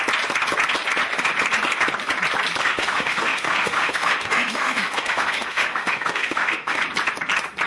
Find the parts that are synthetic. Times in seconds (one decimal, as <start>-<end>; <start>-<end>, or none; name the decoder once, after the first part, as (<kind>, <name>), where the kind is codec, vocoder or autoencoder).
2.6-6.8 (autoencoder, DAC-VAE)